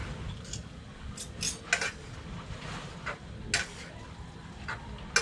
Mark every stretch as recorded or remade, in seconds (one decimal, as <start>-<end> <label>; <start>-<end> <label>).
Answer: 0.0-5.2 recorded